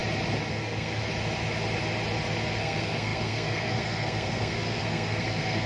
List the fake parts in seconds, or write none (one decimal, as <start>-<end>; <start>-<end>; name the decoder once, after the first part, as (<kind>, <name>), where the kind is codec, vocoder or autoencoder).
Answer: 0.5-1.0 (codec, SNAC); 2.6-5.7